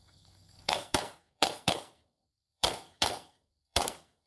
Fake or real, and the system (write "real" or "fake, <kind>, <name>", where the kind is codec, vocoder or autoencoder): fake, codec, SNAC